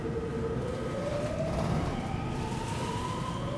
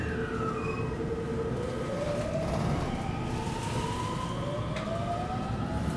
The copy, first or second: first